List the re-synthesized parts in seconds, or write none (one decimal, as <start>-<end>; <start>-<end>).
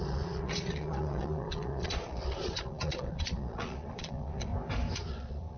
0.0-4.5; 5.1-5.6